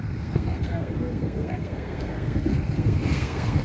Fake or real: fake